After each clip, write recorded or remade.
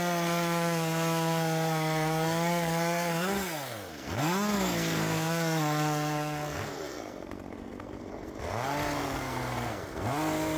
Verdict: remade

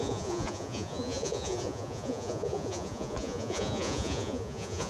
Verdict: remade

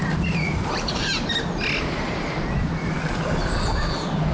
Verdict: recorded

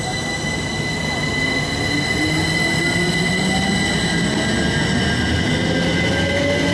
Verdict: recorded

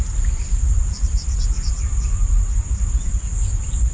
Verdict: recorded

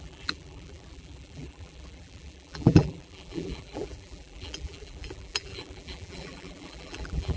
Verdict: remade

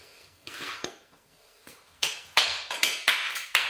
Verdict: remade